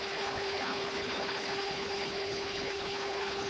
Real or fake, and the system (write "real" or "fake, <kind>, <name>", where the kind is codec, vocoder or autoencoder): fake, codec, HILCodec